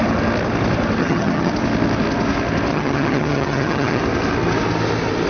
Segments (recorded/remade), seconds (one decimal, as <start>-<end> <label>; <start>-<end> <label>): 0.0-1.0 recorded; 1.0-1.5 remade; 1.5-2.7 recorded; 2.7-4.0 remade; 4.0-5.3 recorded